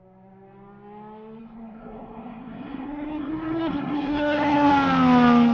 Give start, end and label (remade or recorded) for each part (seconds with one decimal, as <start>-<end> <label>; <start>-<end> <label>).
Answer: 0.0-1.4 recorded; 1.4-4.7 remade; 4.7-5.5 recorded